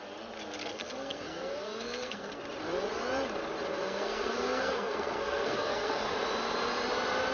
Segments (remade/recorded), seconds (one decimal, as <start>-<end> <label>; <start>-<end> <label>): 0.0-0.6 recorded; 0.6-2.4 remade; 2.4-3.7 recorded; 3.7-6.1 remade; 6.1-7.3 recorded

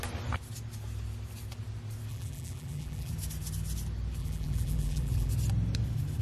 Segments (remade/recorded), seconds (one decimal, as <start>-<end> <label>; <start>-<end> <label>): 0.0-2.1 recorded; 2.1-3.1 remade; 3.1-4.2 recorded; 4.2-5.3 remade; 5.3-6.2 recorded

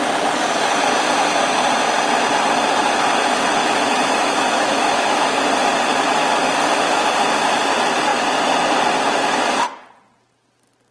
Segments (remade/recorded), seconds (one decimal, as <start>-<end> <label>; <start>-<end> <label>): 0.0-3.6 recorded; 3.6-5.2 remade; 5.2-10.9 recorded

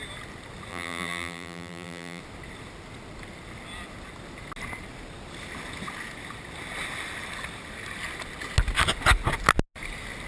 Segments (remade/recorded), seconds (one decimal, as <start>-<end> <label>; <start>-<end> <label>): 0.0-0.7 recorded; 0.7-2.2 remade; 2.2-10.3 recorded

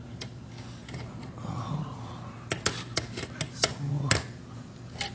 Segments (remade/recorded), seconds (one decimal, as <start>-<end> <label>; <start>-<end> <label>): 0.0-5.1 recorded